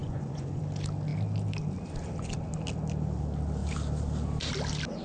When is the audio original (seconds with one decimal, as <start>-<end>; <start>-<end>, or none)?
0.6-5.0